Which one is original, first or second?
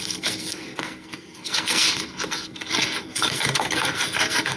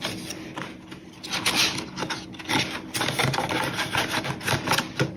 second